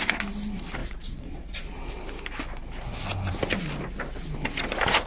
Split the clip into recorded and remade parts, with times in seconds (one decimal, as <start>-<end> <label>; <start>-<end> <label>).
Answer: 0.0-0.8 recorded; 0.8-1.9 remade; 1.9-5.1 recorded